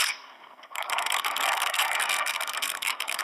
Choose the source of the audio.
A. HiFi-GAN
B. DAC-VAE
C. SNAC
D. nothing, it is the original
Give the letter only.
C